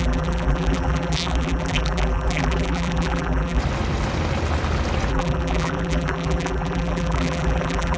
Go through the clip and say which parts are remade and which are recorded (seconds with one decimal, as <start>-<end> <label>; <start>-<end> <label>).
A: 0.0-3.6 remade; 3.6-5.1 recorded; 5.1-8.0 remade